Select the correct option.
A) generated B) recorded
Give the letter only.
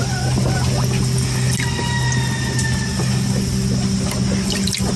B